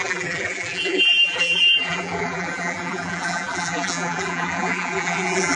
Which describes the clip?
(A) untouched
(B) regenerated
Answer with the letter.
B